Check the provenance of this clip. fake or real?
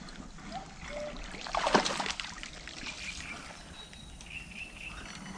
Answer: real